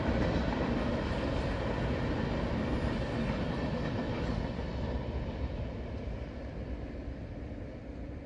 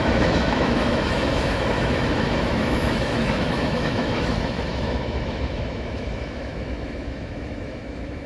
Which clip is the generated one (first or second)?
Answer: second